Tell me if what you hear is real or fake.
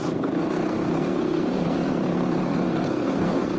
fake